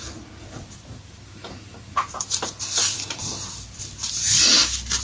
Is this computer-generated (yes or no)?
no